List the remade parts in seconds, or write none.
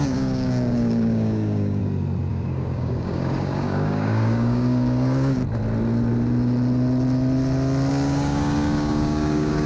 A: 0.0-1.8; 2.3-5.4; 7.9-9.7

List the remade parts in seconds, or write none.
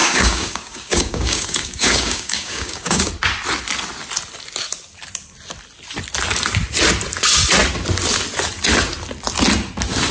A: 0.0-3.1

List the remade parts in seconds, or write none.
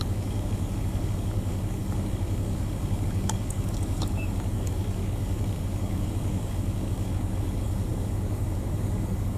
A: 0.0-9.4